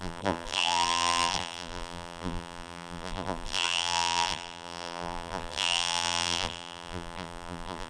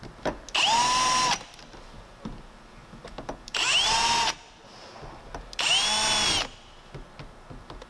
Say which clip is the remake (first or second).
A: first